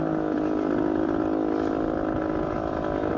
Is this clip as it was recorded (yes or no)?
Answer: yes